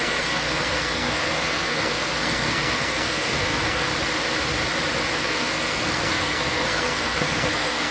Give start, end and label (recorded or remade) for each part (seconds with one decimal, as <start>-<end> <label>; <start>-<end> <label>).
0.0-3.9 remade; 3.9-5.2 recorded; 5.2-7.9 remade